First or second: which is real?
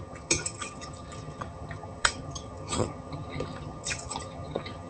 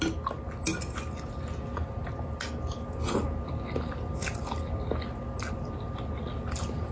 second